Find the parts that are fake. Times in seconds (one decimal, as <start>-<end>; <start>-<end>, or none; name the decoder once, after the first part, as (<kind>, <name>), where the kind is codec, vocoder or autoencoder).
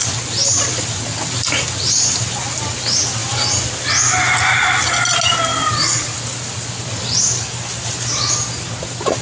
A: 5.5-6.7 (vocoder, BigVGAN v2)